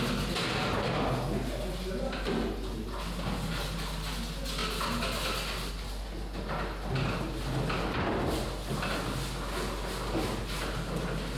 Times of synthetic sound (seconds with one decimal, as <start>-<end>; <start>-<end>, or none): none